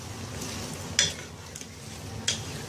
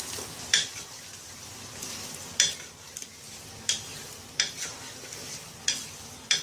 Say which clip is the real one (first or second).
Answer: first